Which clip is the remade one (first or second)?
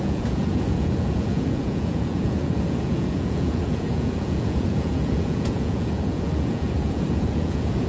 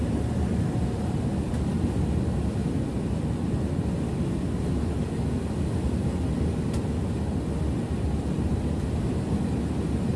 first